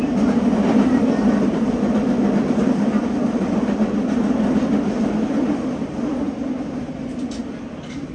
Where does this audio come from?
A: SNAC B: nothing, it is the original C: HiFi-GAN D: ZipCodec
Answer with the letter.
B